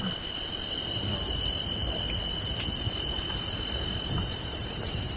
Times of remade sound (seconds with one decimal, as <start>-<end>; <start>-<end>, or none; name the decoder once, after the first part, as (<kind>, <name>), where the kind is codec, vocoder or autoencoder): none

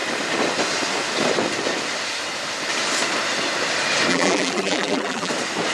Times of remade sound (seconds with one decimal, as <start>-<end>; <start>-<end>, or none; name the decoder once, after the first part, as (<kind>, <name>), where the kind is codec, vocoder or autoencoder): 4.1-5.3 (vocoder, BigVGAN v2)